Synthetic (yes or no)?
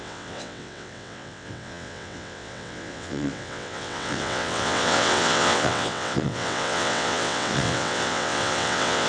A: yes